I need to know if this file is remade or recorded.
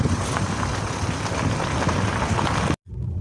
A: recorded